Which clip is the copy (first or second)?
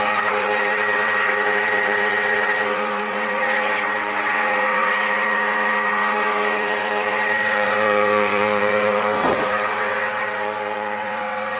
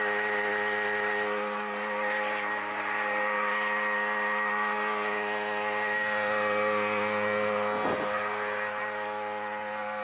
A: first